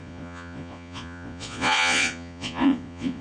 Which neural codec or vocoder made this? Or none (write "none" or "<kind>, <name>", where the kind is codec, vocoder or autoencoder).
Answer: vocoder, Vocos